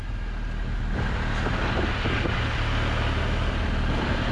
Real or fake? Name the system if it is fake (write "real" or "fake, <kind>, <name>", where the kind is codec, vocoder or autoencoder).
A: real